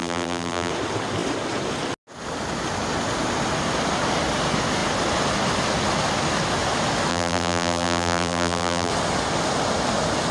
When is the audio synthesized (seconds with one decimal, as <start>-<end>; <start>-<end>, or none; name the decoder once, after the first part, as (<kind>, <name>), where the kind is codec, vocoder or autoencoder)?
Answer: 0.0-0.7 (vocoder, BigVGAN v2); 7.1-8.9